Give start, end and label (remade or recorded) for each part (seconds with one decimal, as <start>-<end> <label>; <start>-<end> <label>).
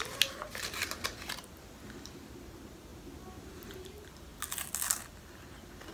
0.0-5.9 recorded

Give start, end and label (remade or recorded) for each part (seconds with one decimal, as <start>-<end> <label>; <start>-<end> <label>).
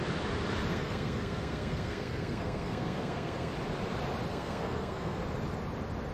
0.0-0.7 recorded; 0.7-3.5 remade; 3.5-4.3 recorded; 4.3-5.2 remade; 5.2-6.1 recorded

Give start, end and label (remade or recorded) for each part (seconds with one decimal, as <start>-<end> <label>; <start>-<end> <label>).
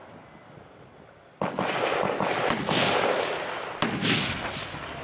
0.0-5.0 recorded